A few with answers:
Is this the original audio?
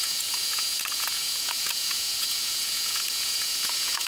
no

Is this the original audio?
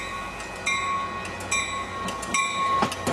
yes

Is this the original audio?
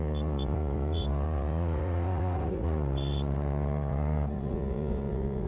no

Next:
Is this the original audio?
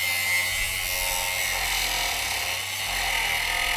yes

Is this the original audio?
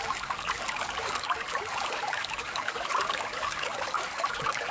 no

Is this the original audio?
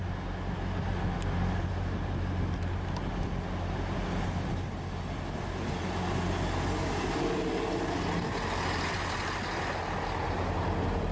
yes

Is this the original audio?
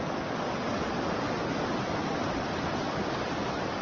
yes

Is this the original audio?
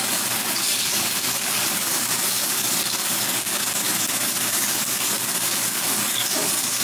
no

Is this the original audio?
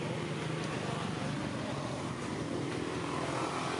yes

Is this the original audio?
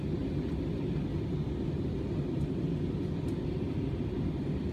yes